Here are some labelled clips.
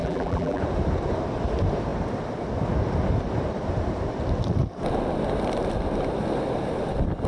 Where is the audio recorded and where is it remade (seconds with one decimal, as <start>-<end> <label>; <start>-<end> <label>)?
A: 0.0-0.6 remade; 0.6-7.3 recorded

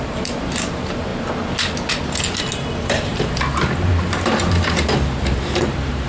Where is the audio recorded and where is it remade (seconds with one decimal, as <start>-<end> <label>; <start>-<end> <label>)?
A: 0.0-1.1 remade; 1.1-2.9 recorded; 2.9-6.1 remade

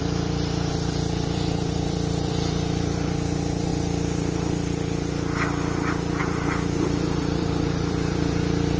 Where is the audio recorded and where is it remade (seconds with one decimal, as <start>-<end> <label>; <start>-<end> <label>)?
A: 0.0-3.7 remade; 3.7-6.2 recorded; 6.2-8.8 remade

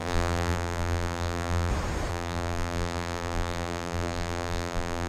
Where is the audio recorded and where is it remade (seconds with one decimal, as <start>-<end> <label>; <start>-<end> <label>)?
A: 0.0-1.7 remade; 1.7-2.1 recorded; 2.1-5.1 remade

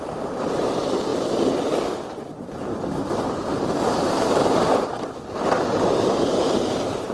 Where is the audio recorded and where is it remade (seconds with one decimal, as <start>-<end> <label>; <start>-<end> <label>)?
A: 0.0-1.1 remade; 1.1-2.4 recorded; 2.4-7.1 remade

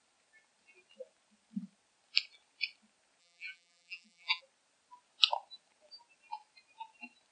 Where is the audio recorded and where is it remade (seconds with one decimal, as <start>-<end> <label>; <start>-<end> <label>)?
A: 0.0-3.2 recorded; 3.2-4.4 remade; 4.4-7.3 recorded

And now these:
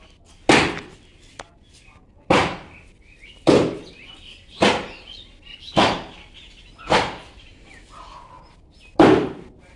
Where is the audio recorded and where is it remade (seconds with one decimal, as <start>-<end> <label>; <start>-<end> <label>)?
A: 0.0-2.4 recorded; 2.4-3.8 remade; 3.8-9.8 recorded